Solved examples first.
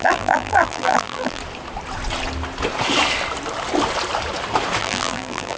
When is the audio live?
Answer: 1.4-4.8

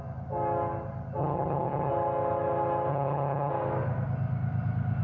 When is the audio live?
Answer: 0.0-1.2; 1.9-2.9; 3.5-5.0

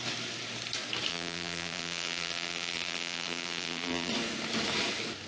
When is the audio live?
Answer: 0.0-1.1; 4.1-5.3

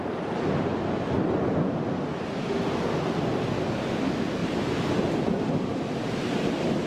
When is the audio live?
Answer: 0.0-4.4; 5.5-6.9